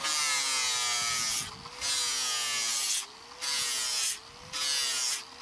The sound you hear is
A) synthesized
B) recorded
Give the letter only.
B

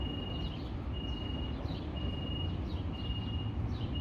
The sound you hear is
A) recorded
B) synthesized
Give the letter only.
A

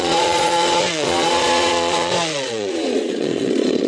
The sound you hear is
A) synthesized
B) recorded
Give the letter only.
A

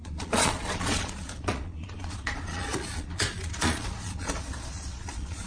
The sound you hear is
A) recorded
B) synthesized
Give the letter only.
B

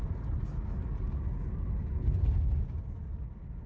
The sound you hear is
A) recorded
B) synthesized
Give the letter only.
A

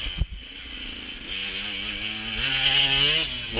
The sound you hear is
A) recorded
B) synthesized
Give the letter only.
A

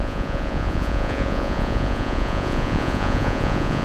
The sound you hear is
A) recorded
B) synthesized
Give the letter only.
B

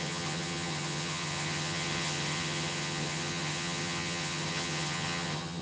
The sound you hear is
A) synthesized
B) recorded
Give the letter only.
A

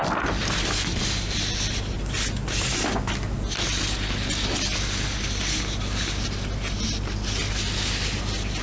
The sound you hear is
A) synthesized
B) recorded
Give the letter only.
B